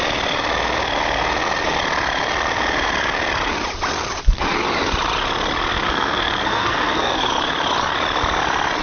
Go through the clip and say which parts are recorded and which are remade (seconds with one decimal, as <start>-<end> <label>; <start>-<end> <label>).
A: 0.0-5.7 recorded; 5.7-7.3 remade; 7.3-8.8 recorded